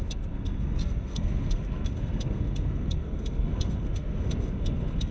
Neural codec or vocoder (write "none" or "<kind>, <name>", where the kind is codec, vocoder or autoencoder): codec, SNAC